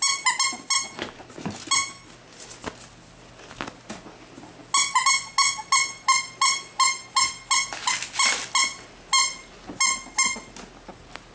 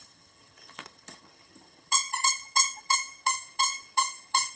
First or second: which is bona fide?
first